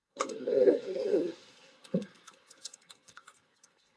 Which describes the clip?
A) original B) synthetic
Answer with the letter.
B